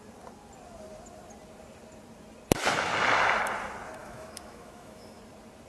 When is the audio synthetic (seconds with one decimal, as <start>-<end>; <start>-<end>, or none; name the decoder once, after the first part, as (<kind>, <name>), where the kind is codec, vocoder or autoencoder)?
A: 4.0-5.2 (autoencoder, DAC-VAE)